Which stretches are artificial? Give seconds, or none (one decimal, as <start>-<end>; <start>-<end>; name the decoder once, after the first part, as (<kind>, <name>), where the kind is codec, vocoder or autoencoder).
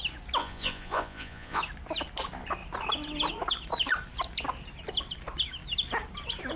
0.4-1.6 (vocoder, Vocos)